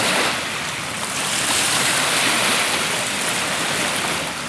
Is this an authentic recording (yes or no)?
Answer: yes